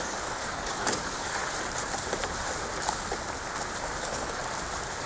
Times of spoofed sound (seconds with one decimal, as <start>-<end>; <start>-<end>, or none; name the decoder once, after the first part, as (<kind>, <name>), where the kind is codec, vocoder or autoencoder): 0.0-1.4 (codec, DAC); 4.0-4.4